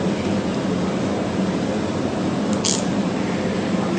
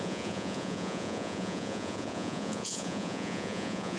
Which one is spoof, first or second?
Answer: second